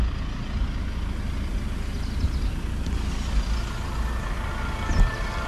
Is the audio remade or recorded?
recorded